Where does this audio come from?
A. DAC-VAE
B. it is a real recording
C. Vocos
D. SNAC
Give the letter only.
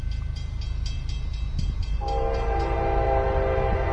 B